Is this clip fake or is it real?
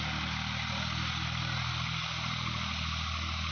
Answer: real